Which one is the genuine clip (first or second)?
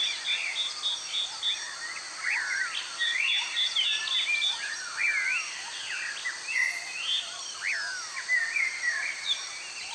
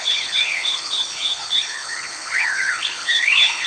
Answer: first